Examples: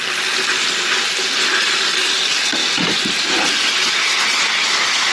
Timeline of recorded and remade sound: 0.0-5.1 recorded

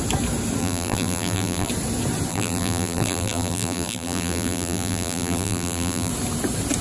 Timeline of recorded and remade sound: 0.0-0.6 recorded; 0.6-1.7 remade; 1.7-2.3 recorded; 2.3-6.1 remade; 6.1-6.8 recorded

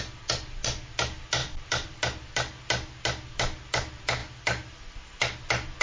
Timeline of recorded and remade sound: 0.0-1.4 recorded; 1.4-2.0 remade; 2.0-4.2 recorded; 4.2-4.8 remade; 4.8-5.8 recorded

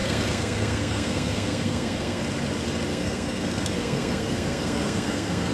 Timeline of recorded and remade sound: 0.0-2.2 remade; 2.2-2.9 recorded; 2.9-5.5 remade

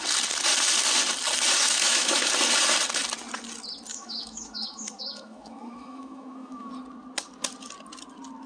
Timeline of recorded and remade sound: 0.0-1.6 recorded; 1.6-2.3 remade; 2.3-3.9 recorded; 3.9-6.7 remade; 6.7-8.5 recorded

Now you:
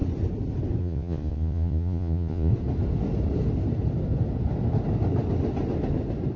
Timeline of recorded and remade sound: 0.0-0.8 recorded; 0.8-2.5 remade; 2.5-6.4 recorded